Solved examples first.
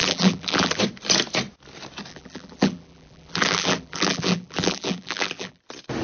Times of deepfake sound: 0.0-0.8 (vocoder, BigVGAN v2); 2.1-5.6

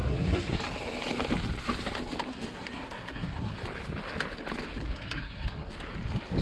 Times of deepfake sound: 0.0-0.6 (codec, SNAC); 2.3-3.6; 4.7-5.7

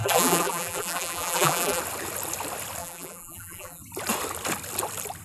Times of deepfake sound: 0.0-1.8 (vocoder, BigVGAN v2); 2.8-3.8